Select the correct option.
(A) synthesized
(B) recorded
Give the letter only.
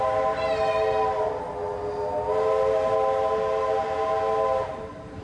B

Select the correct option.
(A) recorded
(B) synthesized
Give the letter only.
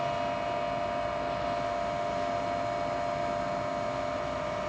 A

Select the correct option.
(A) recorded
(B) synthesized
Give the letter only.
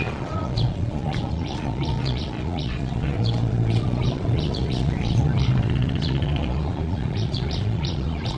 B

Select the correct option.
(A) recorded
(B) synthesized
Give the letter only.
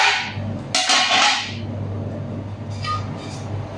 A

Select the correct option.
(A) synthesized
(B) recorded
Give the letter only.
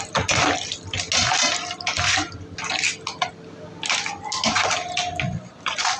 B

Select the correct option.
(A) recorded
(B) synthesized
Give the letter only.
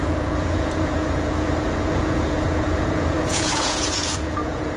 B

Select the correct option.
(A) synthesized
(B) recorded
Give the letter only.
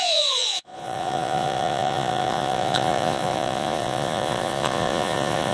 A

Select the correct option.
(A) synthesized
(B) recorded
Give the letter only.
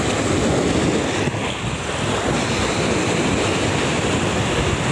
B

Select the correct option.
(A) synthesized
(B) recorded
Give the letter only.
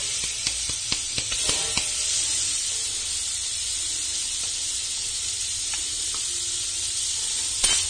B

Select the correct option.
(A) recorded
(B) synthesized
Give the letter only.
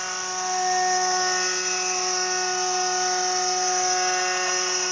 A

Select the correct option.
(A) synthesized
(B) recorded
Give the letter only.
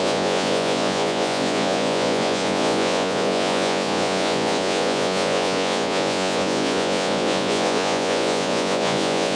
A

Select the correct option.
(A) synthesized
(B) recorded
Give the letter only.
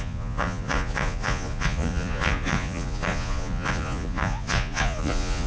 A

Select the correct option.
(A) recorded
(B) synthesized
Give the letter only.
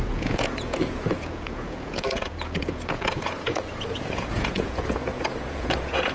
B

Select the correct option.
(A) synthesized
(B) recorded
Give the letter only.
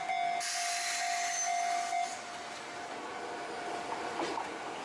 B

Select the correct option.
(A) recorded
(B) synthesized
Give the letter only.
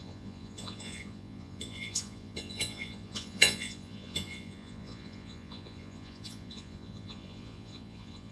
B